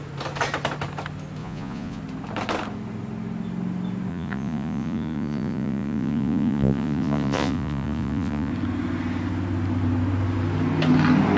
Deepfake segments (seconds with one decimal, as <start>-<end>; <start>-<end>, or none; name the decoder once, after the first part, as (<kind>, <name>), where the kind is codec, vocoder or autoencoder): 1.4-2.0 (vocoder, Vocos); 4.1-8.5